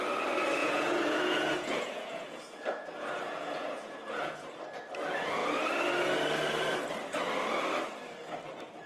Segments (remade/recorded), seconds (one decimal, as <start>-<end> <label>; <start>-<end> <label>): 0.0-0.6 recorded; 0.6-4.6 remade; 4.6-8.9 recorded